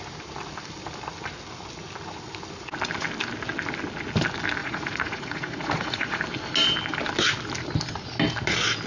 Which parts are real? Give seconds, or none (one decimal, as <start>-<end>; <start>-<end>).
0.0-4.6; 6.2-8.9